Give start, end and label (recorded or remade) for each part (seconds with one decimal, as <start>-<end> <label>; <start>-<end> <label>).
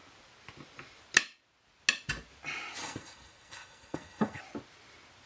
0.0-2.8 recorded; 2.8-4.4 remade; 4.4-5.3 recorded